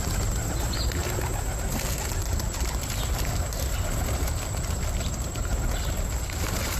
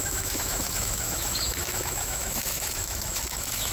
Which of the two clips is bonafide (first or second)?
first